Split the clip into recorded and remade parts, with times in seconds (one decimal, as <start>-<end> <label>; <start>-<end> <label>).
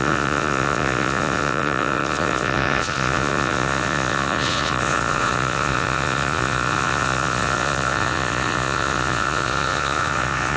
0.0-10.6 remade